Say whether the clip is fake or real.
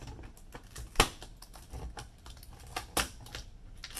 real